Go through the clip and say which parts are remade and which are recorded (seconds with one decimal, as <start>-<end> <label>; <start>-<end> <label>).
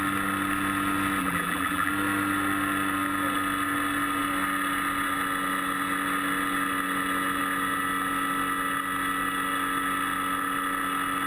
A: 0.0-1.2 recorded; 1.2-1.9 remade; 1.9-11.3 recorded